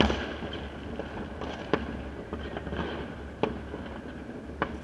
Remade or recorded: recorded